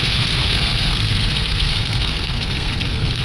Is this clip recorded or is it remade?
remade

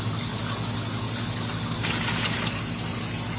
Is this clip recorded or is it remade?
recorded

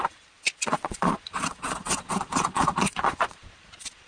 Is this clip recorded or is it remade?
remade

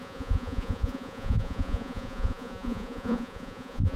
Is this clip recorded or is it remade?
remade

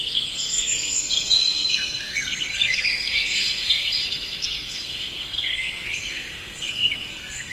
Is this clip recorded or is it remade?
remade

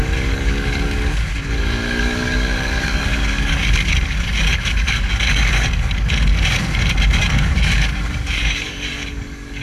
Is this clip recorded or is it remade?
remade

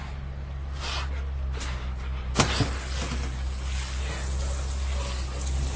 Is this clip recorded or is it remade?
recorded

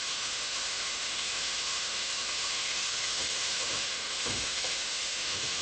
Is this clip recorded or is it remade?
remade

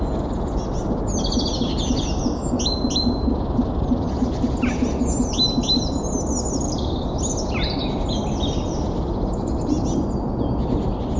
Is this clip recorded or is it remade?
recorded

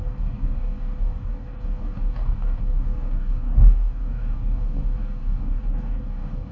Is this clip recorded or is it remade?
remade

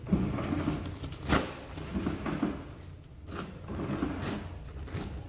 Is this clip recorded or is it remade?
recorded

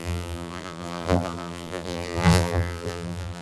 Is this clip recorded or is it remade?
remade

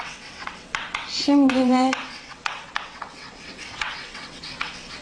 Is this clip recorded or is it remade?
remade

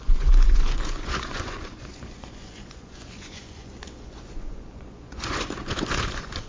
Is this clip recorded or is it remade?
remade